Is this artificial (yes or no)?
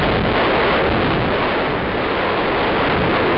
no